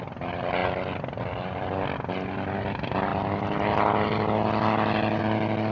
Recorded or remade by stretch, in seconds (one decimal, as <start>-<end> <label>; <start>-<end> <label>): 0.0-5.7 recorded